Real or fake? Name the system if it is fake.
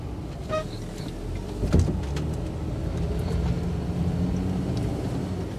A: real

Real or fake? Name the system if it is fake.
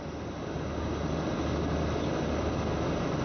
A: real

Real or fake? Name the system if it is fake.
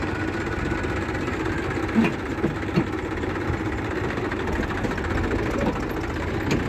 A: real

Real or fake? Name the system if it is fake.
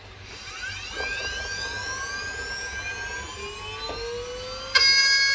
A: real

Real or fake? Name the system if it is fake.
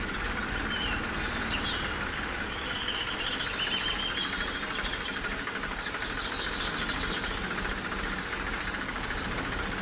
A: real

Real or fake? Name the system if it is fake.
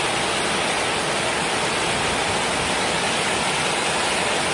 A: real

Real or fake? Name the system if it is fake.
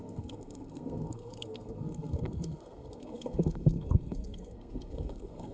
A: fake, codec, SNAC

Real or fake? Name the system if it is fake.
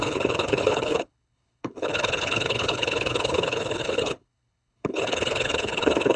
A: fake, codec, HILCodec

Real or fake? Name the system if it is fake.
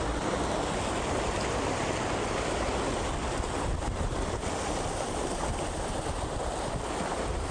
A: real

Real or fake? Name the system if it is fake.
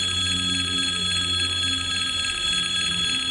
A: real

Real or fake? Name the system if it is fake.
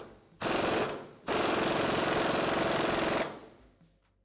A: real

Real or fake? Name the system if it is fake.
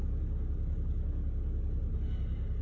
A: real